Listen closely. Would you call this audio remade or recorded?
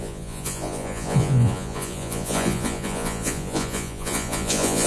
remade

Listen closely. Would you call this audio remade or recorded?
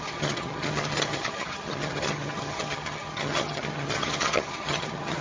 remade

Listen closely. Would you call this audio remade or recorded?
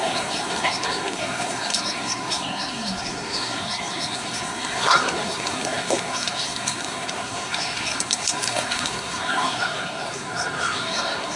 remade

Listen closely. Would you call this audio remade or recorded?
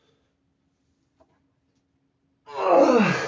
recorded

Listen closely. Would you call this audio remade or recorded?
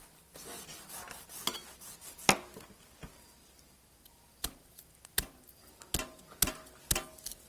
recorded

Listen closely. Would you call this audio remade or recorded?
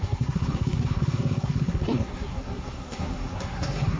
remade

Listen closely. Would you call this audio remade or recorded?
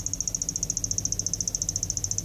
recorded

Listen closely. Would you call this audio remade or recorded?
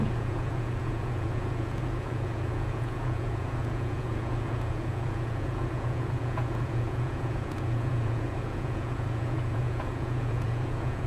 remade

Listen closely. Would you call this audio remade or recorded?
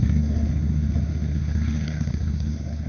remade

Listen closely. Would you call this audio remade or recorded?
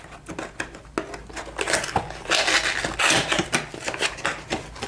recorded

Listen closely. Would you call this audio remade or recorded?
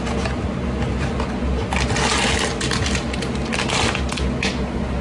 recorded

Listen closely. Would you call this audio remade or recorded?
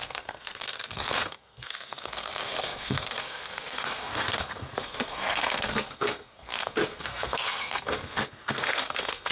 remade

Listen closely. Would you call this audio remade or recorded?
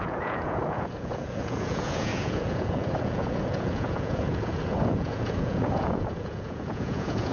remade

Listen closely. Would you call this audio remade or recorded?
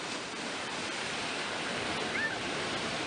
recorded